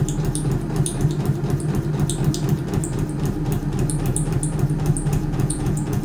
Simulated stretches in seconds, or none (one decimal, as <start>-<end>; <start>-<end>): 5.1-6.0